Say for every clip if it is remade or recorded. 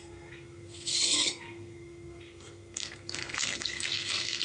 remade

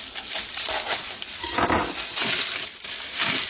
remade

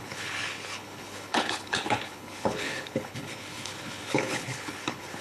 remade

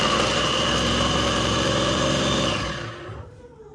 remade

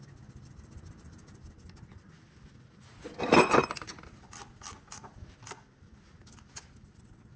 recorded